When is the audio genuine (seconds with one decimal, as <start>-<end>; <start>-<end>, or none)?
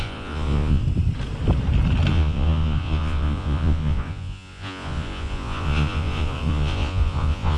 0.8-2.1